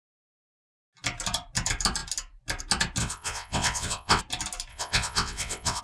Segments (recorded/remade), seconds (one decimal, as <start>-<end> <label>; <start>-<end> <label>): 0.0-3.0 recorded; 3.0-4.2 remade; 4.2-4.7 recorded; 4.7-5.8 remade